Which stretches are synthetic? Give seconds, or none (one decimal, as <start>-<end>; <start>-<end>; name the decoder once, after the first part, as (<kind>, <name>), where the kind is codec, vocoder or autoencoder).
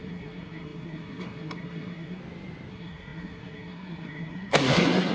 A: 0.0-2.2 (codec, SNAC); 2.7-5.1